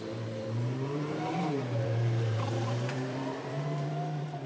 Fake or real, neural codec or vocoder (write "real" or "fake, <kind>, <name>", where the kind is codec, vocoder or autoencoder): fake, vocoder, BigVGAN v2